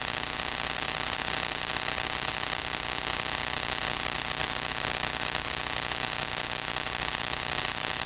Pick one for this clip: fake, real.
fake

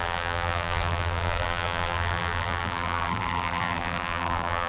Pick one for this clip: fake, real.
fake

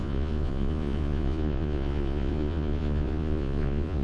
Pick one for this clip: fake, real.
fake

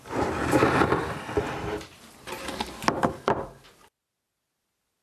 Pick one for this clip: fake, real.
real